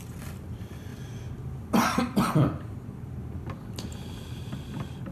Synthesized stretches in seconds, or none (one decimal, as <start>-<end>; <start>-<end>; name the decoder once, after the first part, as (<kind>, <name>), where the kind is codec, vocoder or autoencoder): 0.0-0.9 (vocoder, BigVGAN v2); 1.6-3.2; 4.3-5.1